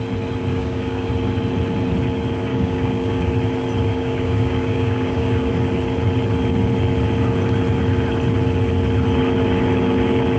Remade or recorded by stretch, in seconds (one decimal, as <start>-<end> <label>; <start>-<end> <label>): 0.0-0.5 recorded; 0.5-1.1 remade; 1.1-2.5 recorded; 2.5-3.3 remade; 3.3-3.9 recorded; 3.9-5.5 remade; 5.5-10.4 recorded